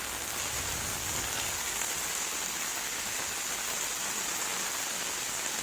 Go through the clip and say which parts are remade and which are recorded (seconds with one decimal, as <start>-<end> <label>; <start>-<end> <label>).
0.0-0.8 recorded; 0.8-1.9 remade; 1.9-5.6 recorded